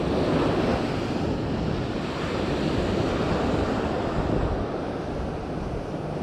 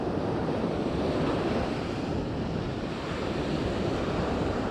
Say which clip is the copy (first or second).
second